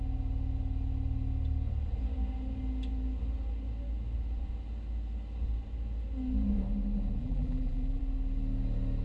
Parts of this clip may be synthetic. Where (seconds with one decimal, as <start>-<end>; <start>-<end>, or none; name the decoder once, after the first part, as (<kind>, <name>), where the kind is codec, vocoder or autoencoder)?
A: 7.2-8.0 (vocoder, BigVGAN v2)